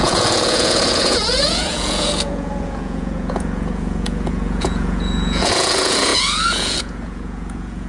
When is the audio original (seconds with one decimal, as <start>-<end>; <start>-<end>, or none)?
none